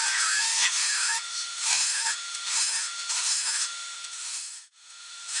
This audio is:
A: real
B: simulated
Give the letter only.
B